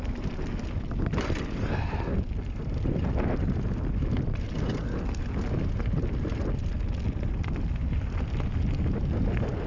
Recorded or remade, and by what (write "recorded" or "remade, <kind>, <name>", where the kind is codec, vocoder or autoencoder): recorded